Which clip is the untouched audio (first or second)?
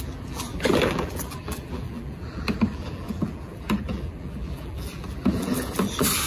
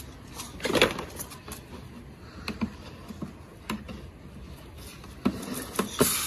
second